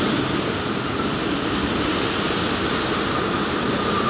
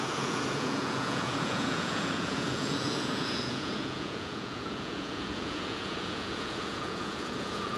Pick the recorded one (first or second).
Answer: first